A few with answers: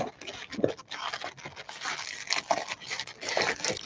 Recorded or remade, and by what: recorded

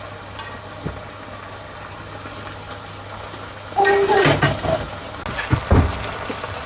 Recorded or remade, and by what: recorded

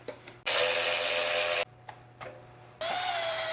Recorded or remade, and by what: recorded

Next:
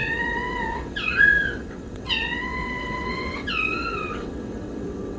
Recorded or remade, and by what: remade, vocoder, WaveNeXt